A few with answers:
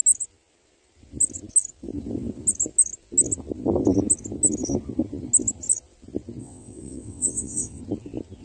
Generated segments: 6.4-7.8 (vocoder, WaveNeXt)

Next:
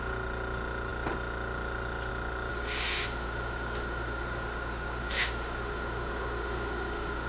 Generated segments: 2.5-7.3 (autoencoder, DAC-VAE)

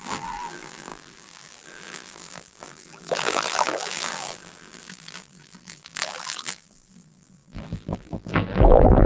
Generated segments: 0.0-9.1 (vocoder, BigVGAN v2)

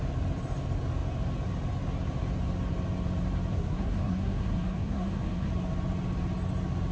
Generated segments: 3.5-5.5 (codec, SNAC)